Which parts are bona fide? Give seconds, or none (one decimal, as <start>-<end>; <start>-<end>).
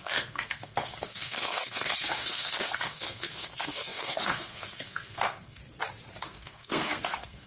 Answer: 5.6-6.2